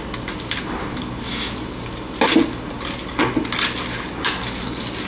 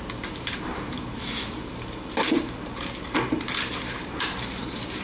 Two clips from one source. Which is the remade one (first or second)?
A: second